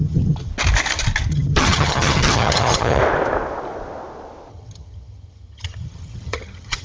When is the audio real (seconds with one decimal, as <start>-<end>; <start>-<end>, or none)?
0.5-1.3; 3.0-4.5